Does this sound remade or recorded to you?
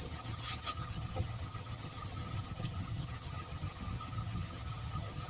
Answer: remade